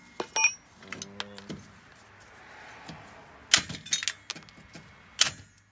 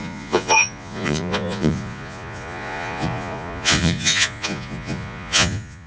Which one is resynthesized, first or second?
second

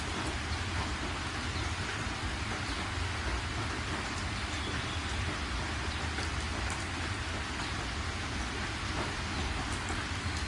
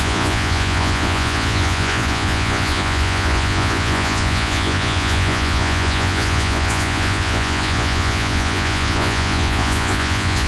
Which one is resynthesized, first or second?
second